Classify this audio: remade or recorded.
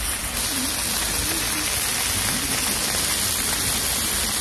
recorded